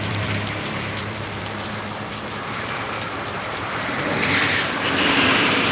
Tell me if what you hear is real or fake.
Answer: fake